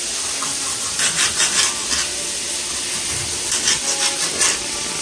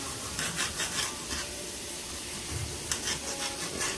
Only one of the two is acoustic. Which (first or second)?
first